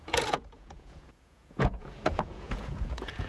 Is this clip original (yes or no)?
no